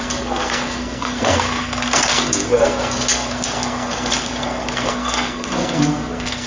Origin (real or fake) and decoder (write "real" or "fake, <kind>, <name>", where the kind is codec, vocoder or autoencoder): fake, codec, SNAC